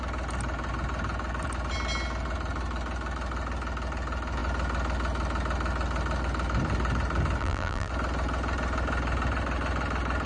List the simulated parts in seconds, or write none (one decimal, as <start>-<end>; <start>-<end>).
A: 7.4-7.9